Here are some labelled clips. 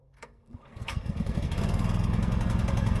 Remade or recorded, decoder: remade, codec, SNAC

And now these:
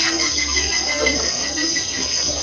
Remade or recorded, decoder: remade, codec, SNAC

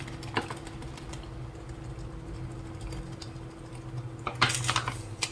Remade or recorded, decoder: recorded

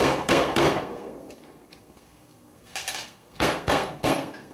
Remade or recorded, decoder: remade, codec, SNAC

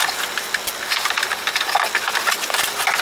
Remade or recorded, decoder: recorded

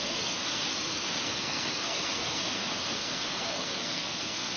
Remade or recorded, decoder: remade, codec, SNAC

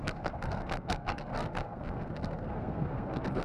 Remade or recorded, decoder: remade, codec, SNAC